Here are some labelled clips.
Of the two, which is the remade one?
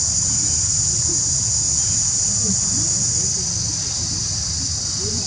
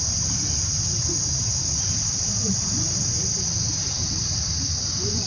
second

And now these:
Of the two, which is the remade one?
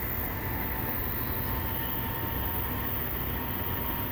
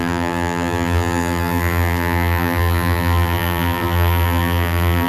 second